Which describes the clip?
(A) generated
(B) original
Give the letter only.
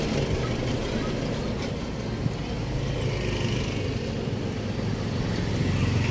B